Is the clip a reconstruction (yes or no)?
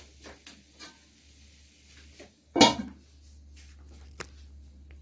no